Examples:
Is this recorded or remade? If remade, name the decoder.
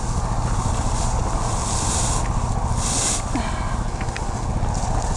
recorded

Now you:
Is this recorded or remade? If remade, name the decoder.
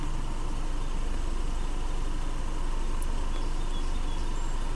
recorded